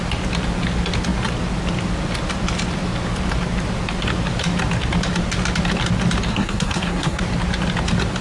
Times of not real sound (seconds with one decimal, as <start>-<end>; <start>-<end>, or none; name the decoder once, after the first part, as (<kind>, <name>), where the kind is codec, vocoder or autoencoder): 6.3-7.2 (codec, SNAC)